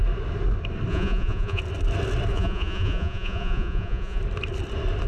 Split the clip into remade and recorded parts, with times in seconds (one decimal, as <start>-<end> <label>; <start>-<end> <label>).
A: 0.0-0.9 recorded; 0.9-1.6 remade; 1.6-2.3 recorded; 2.3-4.2 remade; 4.2-5.1 recorded